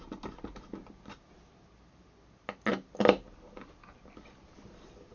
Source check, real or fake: real